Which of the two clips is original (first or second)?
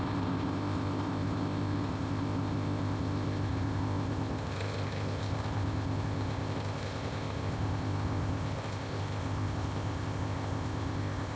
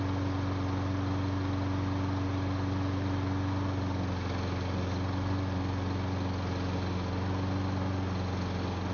second